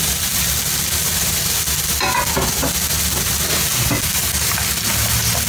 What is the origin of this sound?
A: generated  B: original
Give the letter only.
B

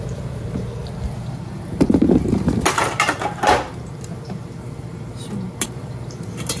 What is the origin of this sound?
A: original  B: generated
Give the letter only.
B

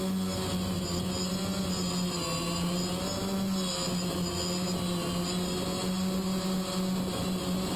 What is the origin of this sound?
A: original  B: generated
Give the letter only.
A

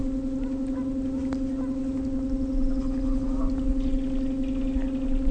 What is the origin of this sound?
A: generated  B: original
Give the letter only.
B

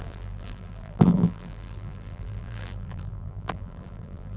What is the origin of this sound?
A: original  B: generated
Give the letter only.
B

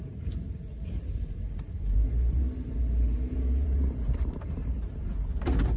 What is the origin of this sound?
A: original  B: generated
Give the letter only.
B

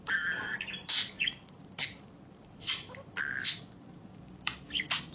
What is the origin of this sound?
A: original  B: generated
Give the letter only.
B